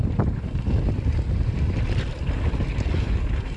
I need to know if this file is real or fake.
real